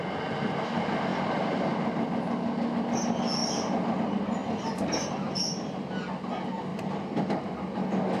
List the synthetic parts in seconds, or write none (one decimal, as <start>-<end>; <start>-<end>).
1.1-1.7; 6.7-7.5